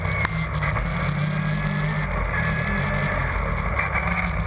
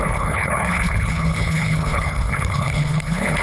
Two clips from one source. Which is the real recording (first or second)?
first